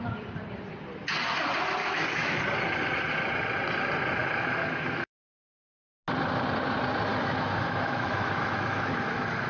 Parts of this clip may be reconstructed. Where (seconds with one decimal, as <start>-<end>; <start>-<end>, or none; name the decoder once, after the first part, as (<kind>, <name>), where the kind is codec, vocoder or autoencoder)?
1.8-2.4 (autoencoder, DAC-VAE); 4.2-5.8; 7.1-9.5